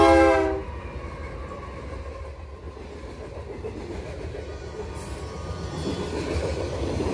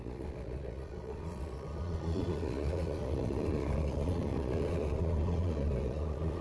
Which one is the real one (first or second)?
first